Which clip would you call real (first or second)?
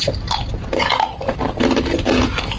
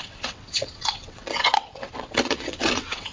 first